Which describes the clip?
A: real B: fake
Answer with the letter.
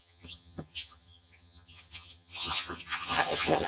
B